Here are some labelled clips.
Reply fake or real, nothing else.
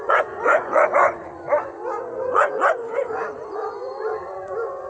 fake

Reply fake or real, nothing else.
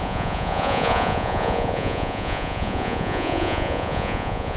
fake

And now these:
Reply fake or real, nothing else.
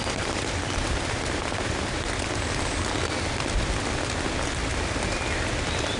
real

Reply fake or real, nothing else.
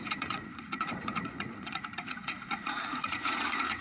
fake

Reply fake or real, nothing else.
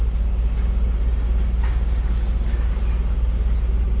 real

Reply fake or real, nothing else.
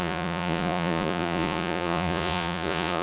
fake